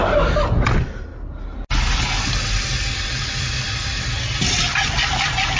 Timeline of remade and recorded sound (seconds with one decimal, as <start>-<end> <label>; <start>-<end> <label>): 0.0-5.6 recorded